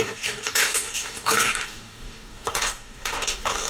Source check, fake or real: fake